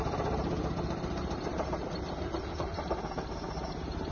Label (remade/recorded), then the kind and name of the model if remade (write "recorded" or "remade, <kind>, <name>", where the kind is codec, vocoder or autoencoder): remade, vocoder, BigVGAN v2